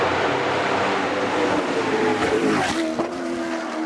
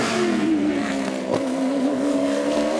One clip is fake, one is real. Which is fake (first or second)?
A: second